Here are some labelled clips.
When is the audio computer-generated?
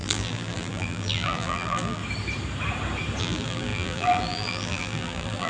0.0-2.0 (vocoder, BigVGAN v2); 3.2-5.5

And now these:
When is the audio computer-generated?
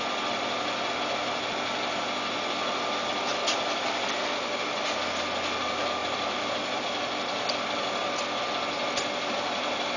3.3-4.7 (vocoder, BigVGAN v2); 6.0-6.8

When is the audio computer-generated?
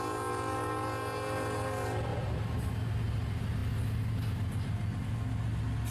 2.1-2.7 (vocoder, BigVGAN v2)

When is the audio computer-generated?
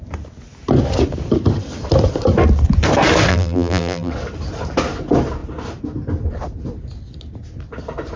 3.3-4.1 (vocoder, BigVGAN v2)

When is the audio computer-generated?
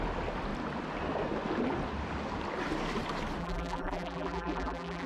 3.4-5.1 (vocoder, BigVGAN v2)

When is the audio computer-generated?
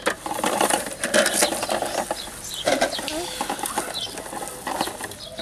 none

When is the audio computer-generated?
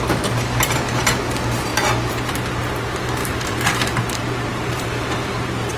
3.2-4.0 (vocoder, BigVGAN v2); 4.5-5.1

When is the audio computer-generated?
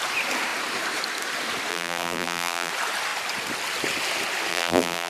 1.7-2.7 (vocoder, BigVGAN v2); 4.5-5.1